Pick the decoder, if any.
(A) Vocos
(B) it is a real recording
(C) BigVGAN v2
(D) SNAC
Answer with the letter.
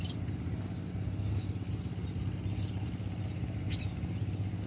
B